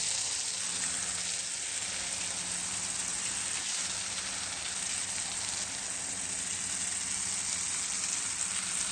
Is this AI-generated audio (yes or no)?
no